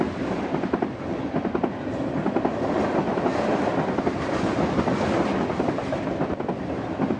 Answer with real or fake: real